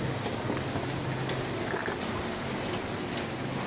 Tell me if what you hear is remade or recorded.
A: recorded